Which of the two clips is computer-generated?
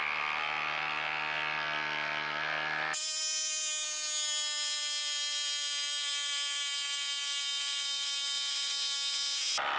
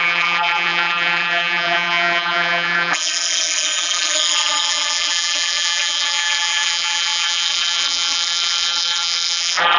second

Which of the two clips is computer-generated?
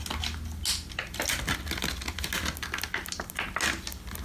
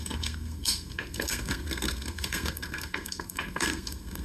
second